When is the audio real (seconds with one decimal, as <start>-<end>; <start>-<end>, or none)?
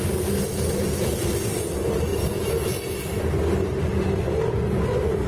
0.0-5.3